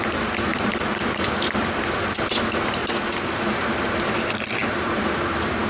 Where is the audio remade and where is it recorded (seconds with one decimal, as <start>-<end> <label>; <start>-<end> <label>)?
0.0-2.8 remade; 2.8-3.3 recorded; 3.3-5.7 remade